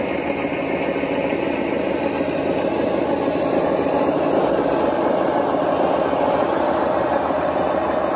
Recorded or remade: recorded